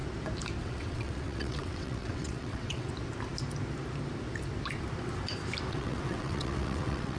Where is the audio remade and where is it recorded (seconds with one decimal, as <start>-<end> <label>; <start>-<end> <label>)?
0.0-0.6 recorded; 0.6-2.9 remade; 2.9-5.7 recorded; 5.7-7.2 remade